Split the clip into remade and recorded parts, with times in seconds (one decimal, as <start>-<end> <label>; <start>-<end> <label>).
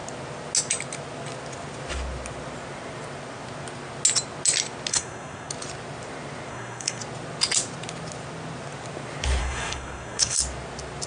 0.0-4.9 recorded; 4.9-5.5 remade; 5.5-6.5 recorded; 6.5-7.0 remade; 7.0-9.4 recorded; 9.4-10.4 remade; 10.4-11.1 recorded